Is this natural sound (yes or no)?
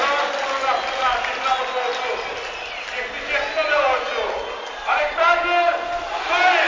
yes